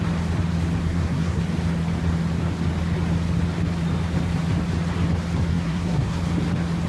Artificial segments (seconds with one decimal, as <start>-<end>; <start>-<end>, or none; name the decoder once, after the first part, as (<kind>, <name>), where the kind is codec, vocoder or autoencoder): 0.8-1.4 (codec, SNAC); 5.5-6.2